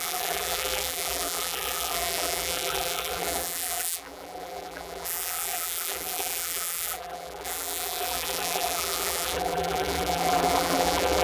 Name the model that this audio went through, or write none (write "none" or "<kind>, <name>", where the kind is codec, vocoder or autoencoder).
vocoder, BigVGAN v2